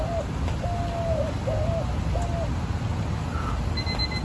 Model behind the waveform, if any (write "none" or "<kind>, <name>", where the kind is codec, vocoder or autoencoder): none